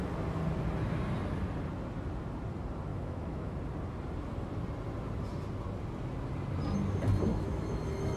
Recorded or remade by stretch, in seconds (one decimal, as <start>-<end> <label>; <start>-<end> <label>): 0.0-2.9 recorded; 2.9-3.6 remade; 3.6-7.3 recorded; 7.3-8.2 remade